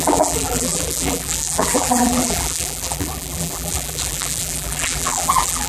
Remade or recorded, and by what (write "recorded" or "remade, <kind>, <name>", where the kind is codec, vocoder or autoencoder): remade, vocoder, BigVGAN v2